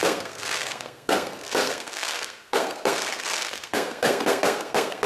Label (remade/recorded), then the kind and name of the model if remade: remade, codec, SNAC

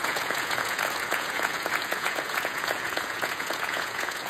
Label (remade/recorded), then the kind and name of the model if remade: remade, vocoder, Vocos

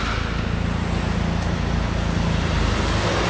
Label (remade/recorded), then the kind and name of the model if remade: recorded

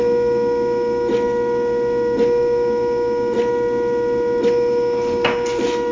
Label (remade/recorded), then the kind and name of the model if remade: recorded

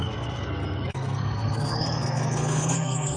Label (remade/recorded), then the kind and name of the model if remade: remade, codec, SNAC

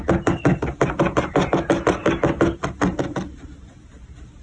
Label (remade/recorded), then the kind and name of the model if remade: recorded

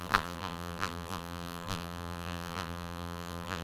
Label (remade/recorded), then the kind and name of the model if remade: remade, vocoder, BigVGAN v2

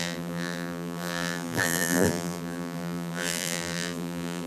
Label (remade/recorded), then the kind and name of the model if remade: remade, vocoder, BigVGAN v2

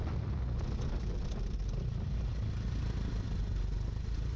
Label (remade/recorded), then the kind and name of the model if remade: recorded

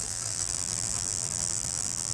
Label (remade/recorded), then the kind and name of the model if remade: remade, vocoder, BigVGAN v2